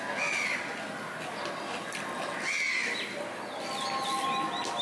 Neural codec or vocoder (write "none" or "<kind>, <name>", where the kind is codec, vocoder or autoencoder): none